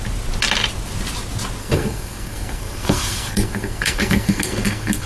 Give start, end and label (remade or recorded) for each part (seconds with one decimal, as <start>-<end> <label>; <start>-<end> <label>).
0.0-1.6 recorded; 1.6-5.1 remade